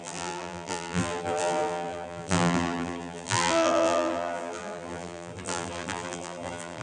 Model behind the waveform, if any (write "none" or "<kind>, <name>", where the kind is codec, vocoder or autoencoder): vocoder, BigVGAN v2